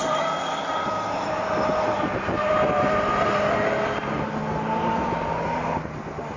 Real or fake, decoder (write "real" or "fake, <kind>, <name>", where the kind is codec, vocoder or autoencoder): real